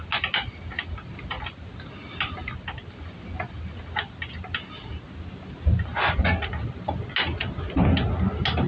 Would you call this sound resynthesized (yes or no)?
no